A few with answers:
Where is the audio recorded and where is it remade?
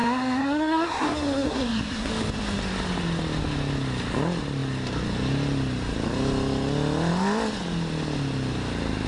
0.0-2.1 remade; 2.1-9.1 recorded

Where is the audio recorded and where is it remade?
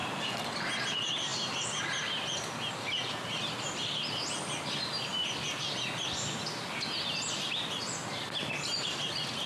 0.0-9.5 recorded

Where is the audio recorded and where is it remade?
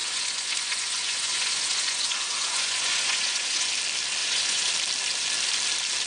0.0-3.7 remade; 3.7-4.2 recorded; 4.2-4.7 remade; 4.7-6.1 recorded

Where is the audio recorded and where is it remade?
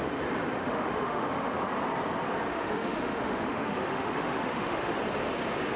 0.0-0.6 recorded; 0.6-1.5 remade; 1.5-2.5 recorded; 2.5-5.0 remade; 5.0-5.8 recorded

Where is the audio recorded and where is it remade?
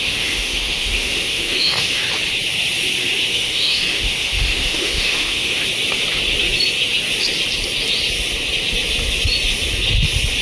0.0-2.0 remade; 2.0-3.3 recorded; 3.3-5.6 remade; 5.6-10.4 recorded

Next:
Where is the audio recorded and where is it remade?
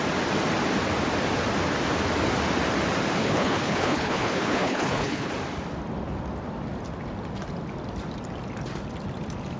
0.0-3.2 recorded; 3.2-5.3 remade; 5.3-9.6 recorded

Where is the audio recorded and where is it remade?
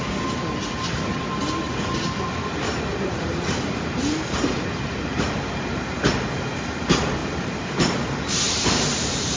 0.0-2.9 recorded; 2.9-6.1 remade; 6.1-7.2 recorded; 7.2-9.4 remade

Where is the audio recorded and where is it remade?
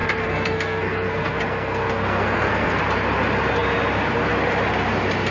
0.0-2.8 remade; 2.8-5.3 recorded